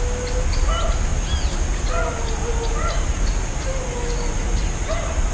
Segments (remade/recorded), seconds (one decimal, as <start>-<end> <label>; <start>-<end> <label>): 0.0-5.3 recorded